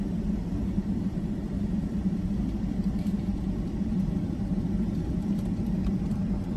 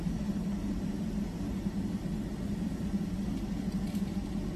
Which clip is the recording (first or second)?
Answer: second